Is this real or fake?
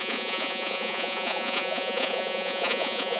fake